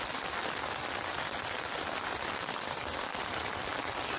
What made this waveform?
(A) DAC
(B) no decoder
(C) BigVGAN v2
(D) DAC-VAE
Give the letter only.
B